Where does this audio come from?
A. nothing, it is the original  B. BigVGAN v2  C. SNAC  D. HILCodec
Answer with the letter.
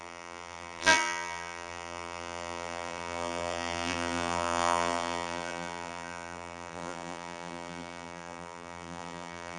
B